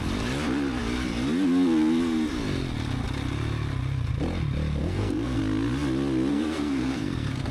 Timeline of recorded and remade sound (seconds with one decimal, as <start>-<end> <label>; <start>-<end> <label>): 0.0-4.8 recorded; 4.8-5.4 remade; 5.4-6.3 recorded; 6.3-7.5 remade